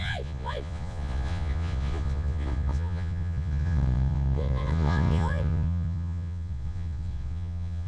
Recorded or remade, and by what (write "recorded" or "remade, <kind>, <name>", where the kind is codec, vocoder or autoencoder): remade, vocoder, Vocos